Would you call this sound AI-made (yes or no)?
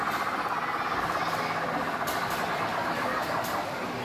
no